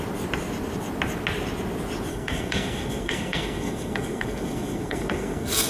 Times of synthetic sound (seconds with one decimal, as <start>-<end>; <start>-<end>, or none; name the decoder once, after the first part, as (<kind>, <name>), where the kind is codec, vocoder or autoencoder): 2.1-5.7 (codec, SNAC)